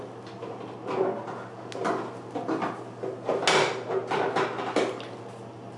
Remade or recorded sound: recorded